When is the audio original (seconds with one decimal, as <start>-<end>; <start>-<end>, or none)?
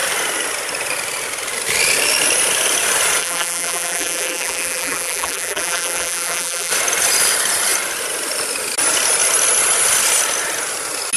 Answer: 0.0-3.2; 6.7-11.2